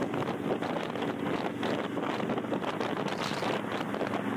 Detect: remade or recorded recorded